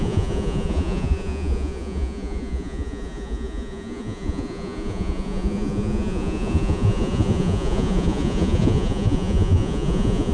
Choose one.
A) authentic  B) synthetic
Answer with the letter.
B